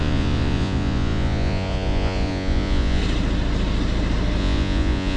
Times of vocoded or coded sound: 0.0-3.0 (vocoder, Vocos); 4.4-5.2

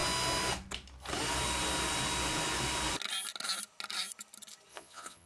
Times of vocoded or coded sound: 4.7-5.3 (vocoder, Vocos)

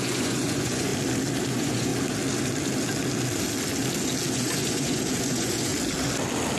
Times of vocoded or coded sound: 0.0-0.9 (vocoder, Vocos); 1.5-1.9; 4.3-5.7

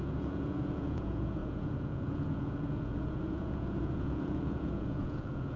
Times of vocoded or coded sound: 0.0-5.6 (vocoder, Vocos)

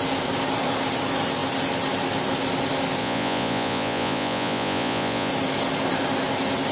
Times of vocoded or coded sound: 3.0-5.3 (vocoder, Vocos)